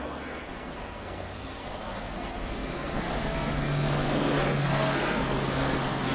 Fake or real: fake